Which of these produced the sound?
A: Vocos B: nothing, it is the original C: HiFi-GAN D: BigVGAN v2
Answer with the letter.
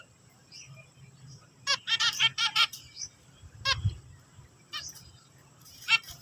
D